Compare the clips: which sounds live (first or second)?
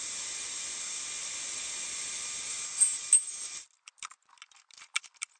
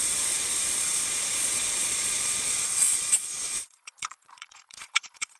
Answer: first